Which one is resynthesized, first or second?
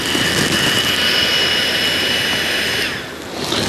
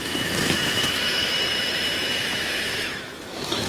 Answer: second